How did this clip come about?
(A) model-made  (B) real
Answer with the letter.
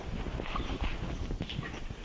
B